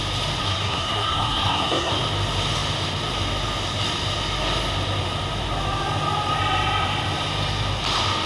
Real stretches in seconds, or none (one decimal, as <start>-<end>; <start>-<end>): 0.0-0.4; 1.9-8.3